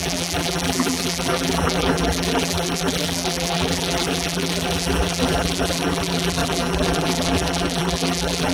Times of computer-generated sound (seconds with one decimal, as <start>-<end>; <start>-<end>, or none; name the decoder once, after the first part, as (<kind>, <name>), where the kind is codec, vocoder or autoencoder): 0.0-8.5 (vocoder, BigVGAN v2)